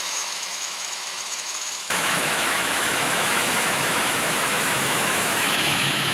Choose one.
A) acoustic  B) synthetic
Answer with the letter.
B